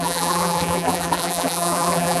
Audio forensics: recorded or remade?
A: remade